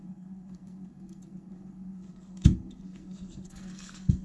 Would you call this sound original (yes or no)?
no